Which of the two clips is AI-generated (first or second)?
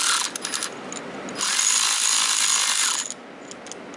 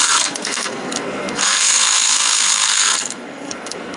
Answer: second